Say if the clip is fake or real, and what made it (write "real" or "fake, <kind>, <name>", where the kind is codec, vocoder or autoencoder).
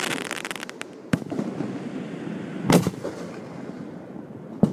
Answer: real